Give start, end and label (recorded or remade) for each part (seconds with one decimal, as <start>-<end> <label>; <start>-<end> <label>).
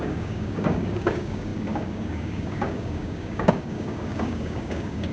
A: 0.0-5.1 remade